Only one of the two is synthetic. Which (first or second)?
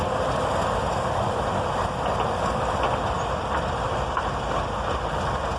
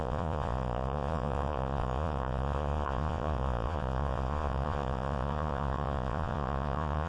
second